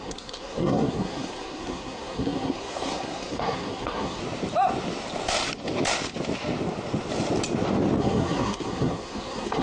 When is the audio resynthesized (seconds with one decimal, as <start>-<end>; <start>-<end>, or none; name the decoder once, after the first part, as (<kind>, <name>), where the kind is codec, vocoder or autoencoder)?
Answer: 0.0-4.2 (codec, SNAC); 8.0-9.6